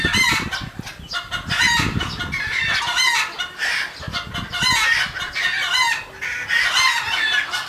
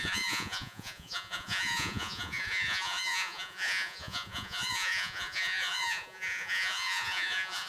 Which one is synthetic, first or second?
second